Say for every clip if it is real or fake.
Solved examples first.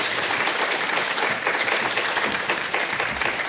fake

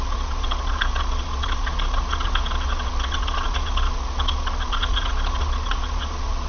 fake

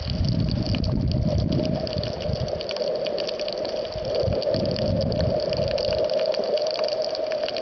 real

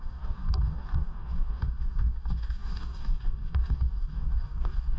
fake